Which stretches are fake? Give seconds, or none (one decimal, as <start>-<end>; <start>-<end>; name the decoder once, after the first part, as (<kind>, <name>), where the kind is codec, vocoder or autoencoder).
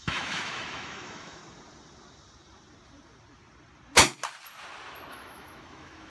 0.0-1.4 (autoencoder, DAC-VAE); 5.1-6.1